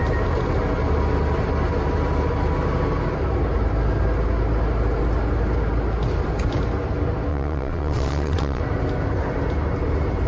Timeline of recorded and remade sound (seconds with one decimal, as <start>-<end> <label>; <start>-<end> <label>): 0.0-7.3 recorded; 7.3-8.6 remade; 8.6-10.3 recorded